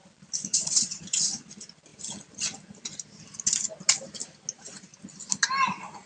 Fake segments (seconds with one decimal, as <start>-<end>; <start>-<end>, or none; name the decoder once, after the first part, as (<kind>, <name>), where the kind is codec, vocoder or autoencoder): 0.5-1.2 (vocoder, Vocos)